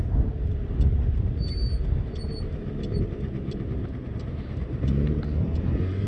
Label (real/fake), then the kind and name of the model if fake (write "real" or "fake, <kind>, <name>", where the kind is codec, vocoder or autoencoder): fake, vocoder, BigVGAN v2